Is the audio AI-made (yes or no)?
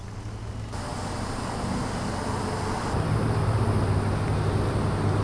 no